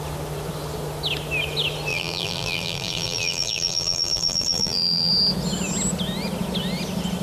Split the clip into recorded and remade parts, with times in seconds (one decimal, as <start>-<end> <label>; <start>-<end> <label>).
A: 0.0-1.9 recorded; 1.9-5.1 remade; 5.1-7.2 recorded